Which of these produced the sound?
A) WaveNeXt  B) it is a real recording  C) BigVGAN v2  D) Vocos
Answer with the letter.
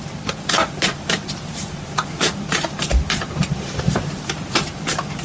C